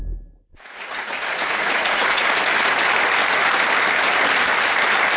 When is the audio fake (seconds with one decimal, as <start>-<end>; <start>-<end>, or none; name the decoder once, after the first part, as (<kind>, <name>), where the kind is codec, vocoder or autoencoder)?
0.5-2.2 (vocoder, Vocos)